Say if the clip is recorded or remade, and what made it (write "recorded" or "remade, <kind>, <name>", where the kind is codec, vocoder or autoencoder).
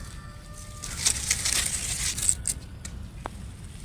recorded